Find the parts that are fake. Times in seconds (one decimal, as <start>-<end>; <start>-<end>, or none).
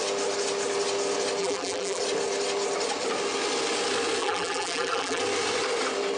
1.4-2.0; 4.2-5.2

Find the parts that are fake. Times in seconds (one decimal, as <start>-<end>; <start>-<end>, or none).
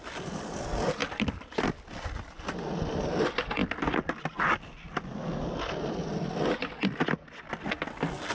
0.0-3.6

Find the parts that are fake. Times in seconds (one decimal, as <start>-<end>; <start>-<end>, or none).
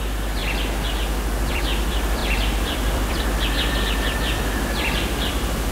0.0-0.4; 1.5-5.7